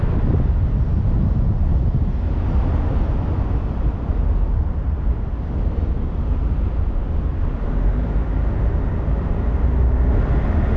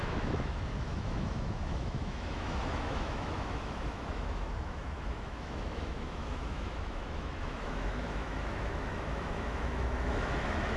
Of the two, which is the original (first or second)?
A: first